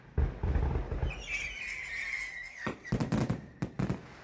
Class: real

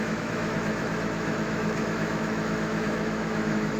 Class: fake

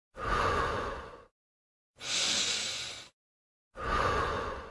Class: fake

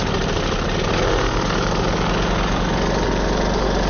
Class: real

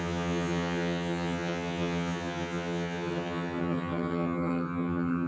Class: fake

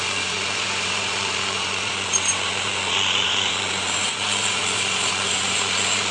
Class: fake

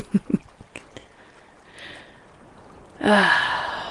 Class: real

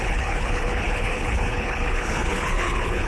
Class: fake